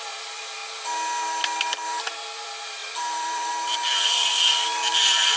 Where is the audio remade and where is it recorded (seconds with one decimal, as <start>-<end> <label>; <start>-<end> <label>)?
0.0-0.6 remade; 0.6-2.0 recorded; 2.0-5.4 remade